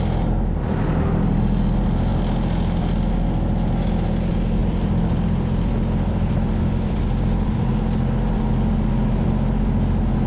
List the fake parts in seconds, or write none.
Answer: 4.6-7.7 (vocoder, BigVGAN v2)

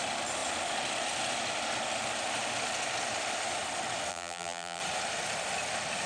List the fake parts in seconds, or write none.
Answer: 4.1-4.8 (vocoder, BigVGAN v2)

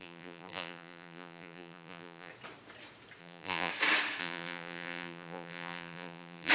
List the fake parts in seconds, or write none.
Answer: 0.0-2.3 (vocoder, BigVGAN v2); 3.2-3.7; 4.2-6.5

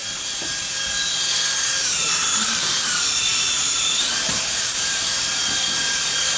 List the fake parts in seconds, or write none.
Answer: 1.8-6.4 (vocoder, BigVGAN v2)